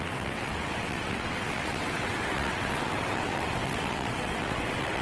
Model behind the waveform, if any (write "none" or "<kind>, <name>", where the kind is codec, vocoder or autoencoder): vocoder, WaveNeXt